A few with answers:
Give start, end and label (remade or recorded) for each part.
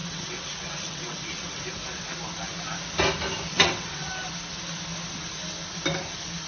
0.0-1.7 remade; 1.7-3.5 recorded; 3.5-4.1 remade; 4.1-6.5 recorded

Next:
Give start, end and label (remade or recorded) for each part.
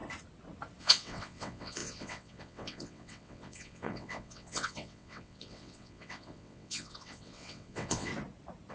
0.0-0.8 recorded; 0.8-8.1 remade; 8.1-8.7 recorded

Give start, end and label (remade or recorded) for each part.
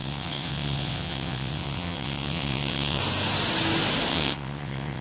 0.0-3.0 remade; 3.0-4.1 recorded; 4.1-5.0 remade